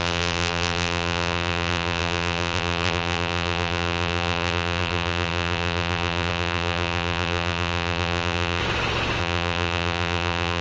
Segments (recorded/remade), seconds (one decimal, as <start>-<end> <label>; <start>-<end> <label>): 0.0-8.6 remade; 8.6-9.2 recorded; 9.2-10.6 remade